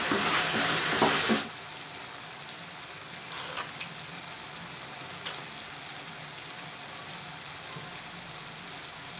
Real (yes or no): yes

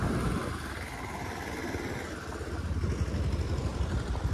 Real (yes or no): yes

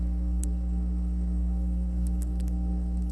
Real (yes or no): no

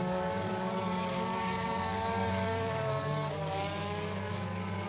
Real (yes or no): no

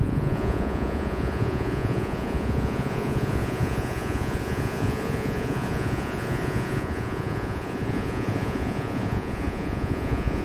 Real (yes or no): no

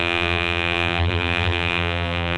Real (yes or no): no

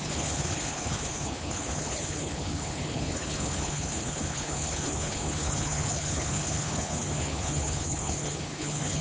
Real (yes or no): no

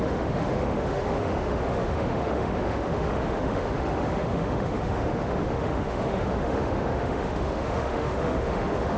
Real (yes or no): no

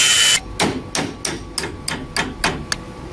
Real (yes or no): yes